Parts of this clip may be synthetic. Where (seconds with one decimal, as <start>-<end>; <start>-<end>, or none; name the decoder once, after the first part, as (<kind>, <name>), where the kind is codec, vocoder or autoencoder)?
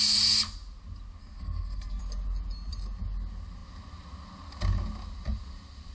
1.2-2.0 (codec, SNAC)